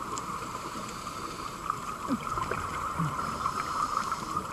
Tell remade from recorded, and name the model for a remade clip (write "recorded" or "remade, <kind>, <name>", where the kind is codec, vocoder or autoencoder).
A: remade, vocoder, BigVGAN v2